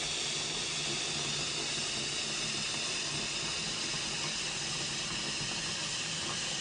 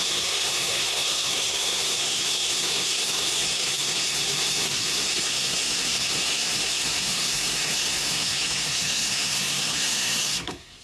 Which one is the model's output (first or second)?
second